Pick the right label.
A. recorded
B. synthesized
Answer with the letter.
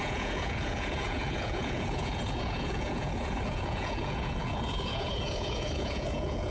B